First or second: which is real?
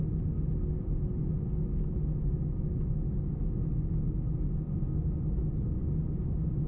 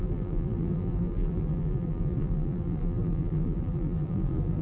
first